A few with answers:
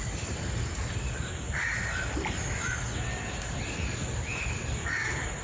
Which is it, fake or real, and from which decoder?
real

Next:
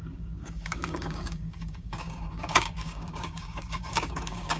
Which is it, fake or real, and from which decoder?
fake, codec, DAC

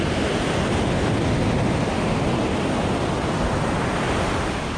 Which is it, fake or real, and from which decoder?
real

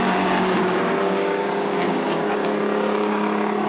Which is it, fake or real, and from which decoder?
fake, codec, DAC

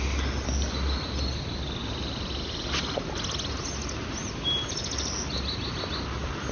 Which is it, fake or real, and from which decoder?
real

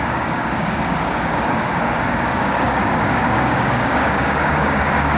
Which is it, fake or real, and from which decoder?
fake, codec, DAC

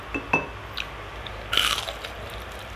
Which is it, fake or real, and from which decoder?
real